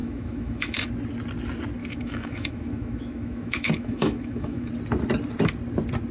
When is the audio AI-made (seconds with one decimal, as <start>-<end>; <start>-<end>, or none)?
0.0-0.9; 1.8-4.7